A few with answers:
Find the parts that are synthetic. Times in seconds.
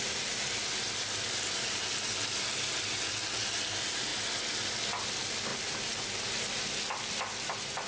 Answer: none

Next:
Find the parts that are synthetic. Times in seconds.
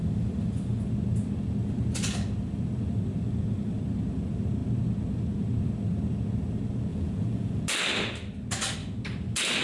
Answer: 6.9-7.6 (vocoder, Vocos)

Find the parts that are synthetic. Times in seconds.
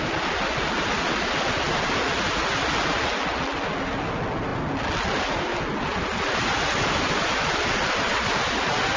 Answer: none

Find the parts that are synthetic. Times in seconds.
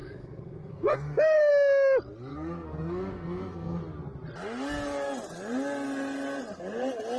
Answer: 0.0-1.5 (codec, SNAC); 2.3-3.8